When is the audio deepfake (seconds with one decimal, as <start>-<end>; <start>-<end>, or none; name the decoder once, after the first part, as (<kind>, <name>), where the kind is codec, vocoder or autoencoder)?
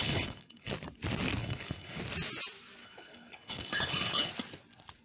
0.0-0.7 (codec, HILCodec); 1.4-2.0; 2.8-4.3